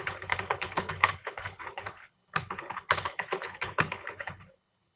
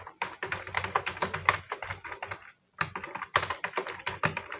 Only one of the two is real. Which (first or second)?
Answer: second